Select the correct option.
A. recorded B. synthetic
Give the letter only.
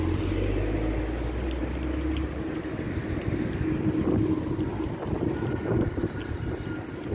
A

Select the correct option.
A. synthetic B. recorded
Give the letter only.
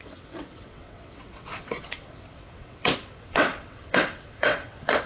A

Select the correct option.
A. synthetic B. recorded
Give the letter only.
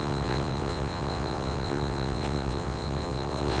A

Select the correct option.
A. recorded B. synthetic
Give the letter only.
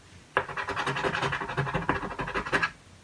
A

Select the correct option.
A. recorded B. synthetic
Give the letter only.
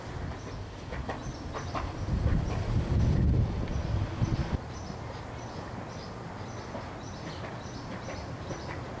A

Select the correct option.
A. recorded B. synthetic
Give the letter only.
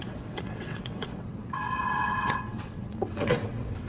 B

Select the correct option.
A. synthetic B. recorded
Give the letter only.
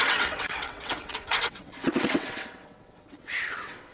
A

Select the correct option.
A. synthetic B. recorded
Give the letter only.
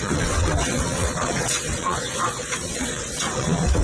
A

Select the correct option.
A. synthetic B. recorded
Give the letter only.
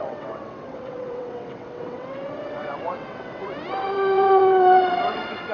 A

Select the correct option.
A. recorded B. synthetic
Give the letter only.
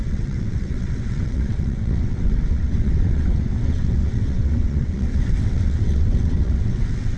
B